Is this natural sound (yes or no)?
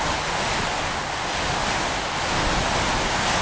yes